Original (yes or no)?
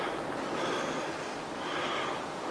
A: yes